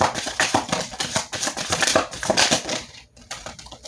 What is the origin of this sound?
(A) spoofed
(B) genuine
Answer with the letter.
B